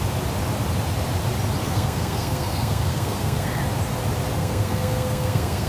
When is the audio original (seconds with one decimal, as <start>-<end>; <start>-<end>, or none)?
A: 0.0-1.6; 3.6-4.4